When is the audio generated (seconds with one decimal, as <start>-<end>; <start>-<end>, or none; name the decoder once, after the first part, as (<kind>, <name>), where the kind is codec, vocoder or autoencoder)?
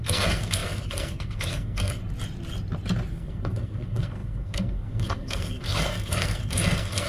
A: 0.0-2.0 (codec, SNAC); 3.1-7.1